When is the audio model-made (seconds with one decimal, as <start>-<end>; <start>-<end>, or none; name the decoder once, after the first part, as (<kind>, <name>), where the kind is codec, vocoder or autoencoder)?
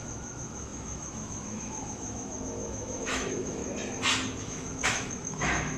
0.0-3.6 (autoencoder, DAC-VAE); 4.4-5.8